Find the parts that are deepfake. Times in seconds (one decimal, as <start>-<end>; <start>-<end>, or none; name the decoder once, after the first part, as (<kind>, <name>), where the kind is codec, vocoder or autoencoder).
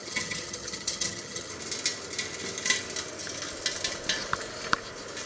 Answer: 0.0-1.5 (vocoder, HiFi-GAN)